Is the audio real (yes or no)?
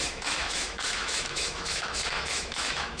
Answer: no